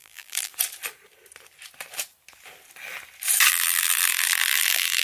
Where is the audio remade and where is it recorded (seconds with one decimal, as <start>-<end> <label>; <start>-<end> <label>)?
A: 0.0-0.5 remade; 0.5-3.5 recorded; 3.5-5.0 remade